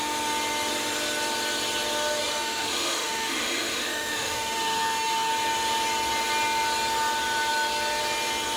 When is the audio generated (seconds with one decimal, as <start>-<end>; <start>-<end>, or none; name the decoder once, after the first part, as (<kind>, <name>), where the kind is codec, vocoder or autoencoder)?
2.2-5.3 (autoencoder, DAC-VAE)